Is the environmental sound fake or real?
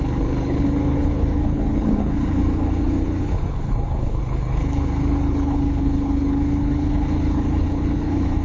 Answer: fake